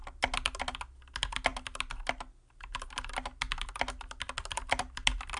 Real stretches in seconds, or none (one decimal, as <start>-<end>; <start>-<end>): 0.0-5.4